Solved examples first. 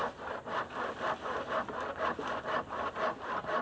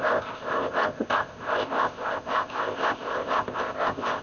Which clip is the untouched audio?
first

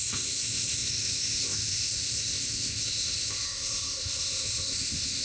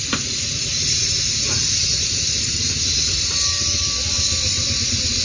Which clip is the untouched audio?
second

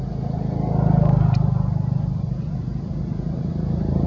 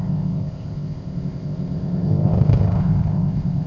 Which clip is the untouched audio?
first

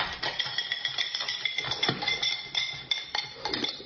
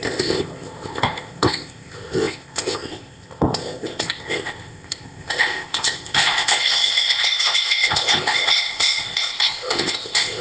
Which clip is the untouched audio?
first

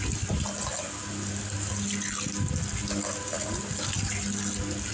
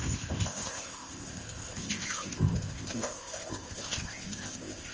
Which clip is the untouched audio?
first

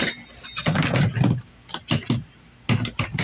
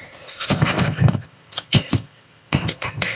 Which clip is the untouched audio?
first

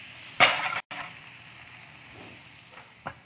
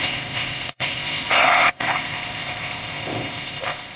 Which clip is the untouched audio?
first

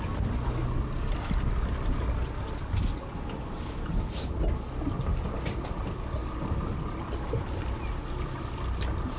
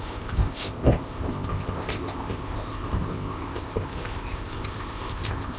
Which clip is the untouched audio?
first